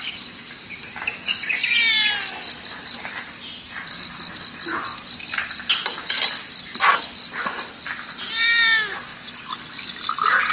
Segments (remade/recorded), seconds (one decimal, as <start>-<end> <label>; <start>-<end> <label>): 0.0-10.5 recorded